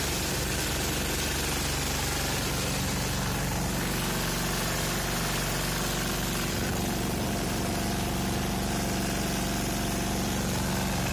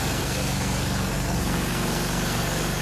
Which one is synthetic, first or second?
second